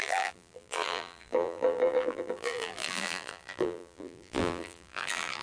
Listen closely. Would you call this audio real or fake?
fake